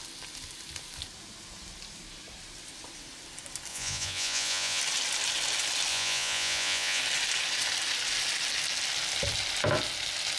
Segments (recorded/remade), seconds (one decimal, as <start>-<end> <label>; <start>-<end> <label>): 0.0-3.7 recorded; 3.7-4.8 remade; 4.8-5.9 recorded; 5.9-7.0 remade; 7.0-10.4 recorded